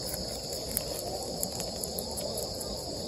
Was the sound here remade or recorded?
recorded